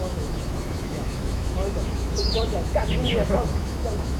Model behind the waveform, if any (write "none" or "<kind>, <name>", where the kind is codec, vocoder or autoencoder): autoencoder, DAC-VAE